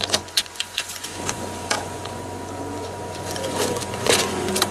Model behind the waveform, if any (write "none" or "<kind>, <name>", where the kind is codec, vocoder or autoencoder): vocoder, Vocos